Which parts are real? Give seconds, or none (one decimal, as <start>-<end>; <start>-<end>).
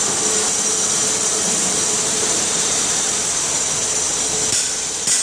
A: 0.0-1.3; 3.3-5.2